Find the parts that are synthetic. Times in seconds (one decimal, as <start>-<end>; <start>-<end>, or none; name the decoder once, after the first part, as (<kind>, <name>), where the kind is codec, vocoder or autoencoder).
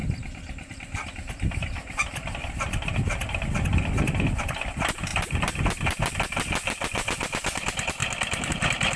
0.7-8.0 (vocoder, BigVGAN v2); 8.5-9.0